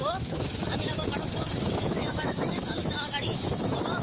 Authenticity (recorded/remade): remade